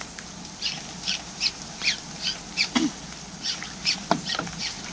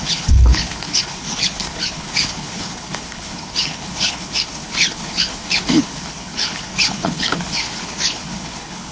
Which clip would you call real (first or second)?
first